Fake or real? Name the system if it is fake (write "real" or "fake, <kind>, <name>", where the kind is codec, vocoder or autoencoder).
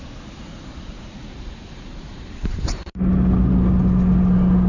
real